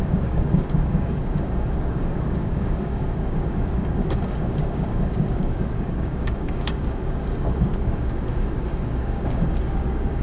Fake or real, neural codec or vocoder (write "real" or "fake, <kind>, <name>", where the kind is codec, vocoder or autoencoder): fake, codec, DAC